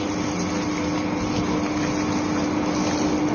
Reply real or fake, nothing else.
real